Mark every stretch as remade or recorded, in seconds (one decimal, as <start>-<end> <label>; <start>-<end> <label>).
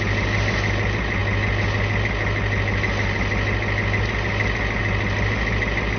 0.0-6.0 recorded